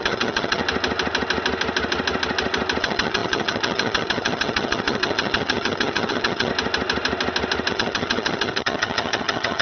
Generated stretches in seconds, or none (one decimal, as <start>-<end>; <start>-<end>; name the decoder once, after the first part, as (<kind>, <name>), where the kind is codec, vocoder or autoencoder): 0.0-0.6 (vocoder, HiFi-GAN); 2.8-6.5; 7.7-9.6